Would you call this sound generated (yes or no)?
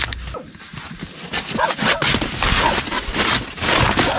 no